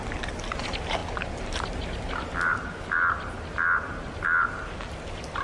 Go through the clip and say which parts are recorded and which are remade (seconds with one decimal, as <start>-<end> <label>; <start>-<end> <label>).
0.0-5.4 recorded